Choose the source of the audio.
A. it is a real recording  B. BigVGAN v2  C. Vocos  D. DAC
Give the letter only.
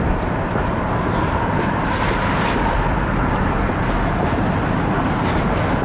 B